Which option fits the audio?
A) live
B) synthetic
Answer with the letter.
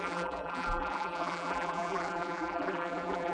B